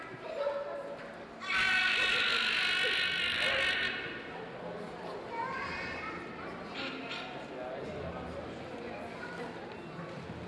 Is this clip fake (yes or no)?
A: no